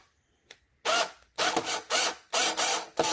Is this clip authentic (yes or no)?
yes